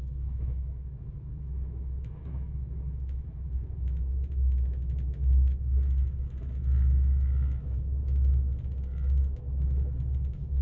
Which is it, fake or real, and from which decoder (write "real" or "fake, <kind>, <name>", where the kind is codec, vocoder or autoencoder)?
fake, autoencoder, DAC-VAE